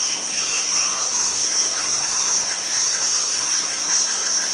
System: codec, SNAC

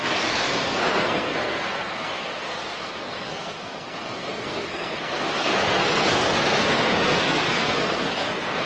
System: codec, SNAC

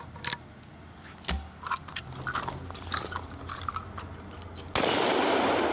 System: none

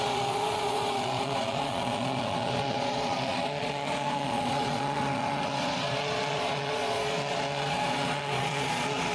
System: vocoder, Vocos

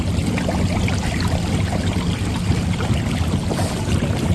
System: vocoder, BigVGAN v2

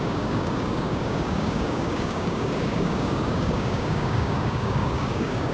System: codec, DAC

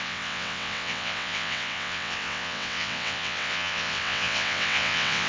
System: vocoder, WaveNeXt